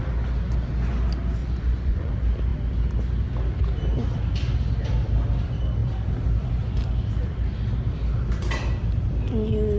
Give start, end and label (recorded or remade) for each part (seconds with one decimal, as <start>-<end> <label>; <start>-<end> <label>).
0.0-1.4 recorded; 1.4-2.1 remade; 2.1-9.8 recorded